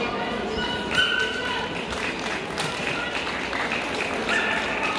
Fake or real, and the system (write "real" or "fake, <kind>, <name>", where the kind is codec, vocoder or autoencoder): real